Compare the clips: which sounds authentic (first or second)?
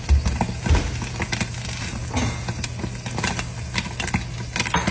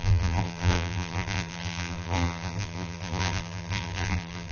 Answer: first